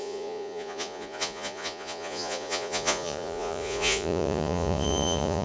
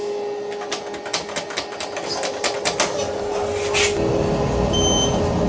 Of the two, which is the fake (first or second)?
first